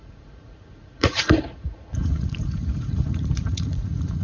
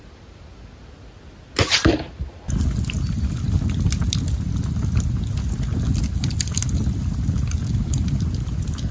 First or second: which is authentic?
second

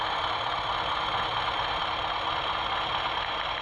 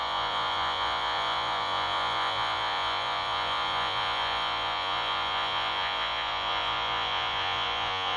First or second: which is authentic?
first